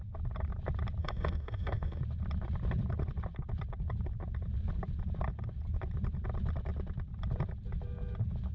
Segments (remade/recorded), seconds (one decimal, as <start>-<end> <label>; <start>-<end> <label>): 0.0-1.0 recorded; 1.0-2.0 remade; 2.0-8.5 recorded